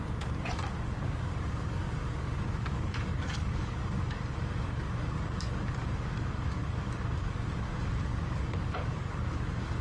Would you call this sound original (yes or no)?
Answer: no